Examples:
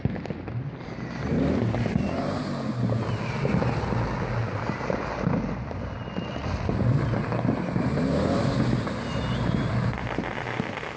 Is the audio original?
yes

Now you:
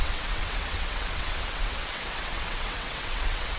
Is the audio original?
no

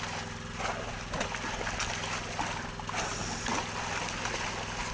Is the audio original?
yes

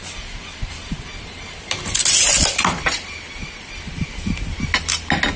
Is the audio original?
yes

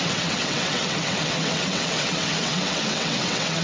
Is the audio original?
no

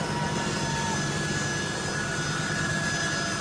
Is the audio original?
yes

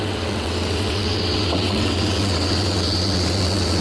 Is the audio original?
no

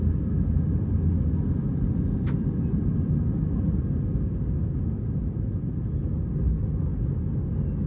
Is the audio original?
yes